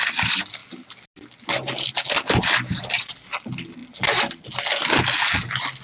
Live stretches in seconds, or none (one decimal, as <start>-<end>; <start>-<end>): 0.0-5.8